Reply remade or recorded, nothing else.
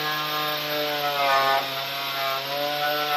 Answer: recorded